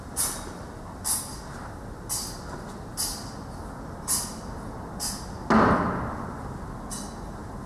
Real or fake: real